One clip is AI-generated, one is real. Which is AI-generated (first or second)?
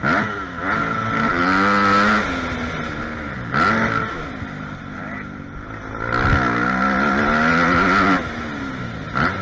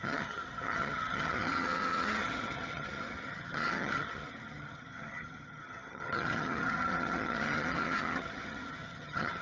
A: second